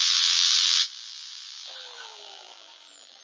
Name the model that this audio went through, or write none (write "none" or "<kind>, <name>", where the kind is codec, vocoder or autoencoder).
vocoder, BigVGAN v2